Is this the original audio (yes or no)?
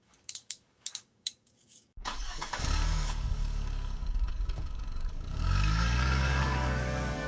no